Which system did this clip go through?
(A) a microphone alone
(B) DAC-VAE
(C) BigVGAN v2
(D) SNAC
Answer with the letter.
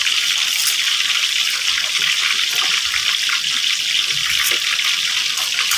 A